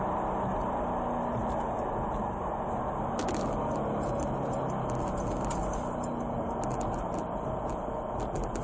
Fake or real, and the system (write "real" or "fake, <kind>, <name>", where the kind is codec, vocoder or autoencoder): real